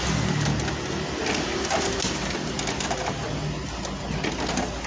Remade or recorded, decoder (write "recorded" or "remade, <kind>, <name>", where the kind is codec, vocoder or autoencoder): recorded